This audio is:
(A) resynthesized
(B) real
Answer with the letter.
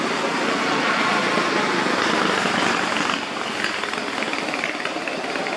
B